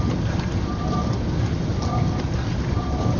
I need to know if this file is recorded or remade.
recorded